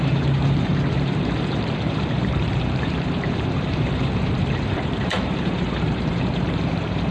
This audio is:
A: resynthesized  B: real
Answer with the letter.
A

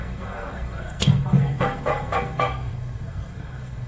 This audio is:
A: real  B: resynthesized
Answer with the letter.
B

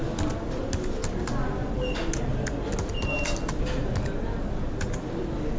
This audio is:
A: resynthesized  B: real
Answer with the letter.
B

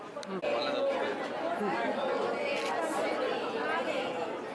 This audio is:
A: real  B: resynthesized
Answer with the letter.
A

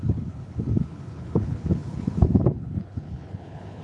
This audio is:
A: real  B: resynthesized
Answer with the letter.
B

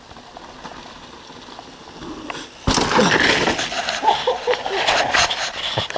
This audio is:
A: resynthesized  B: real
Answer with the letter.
B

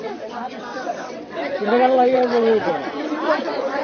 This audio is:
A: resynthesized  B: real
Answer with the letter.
A